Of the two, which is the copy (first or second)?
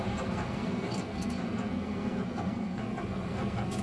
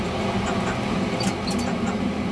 first